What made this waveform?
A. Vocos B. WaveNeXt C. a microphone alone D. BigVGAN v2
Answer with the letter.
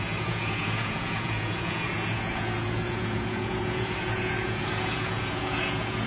A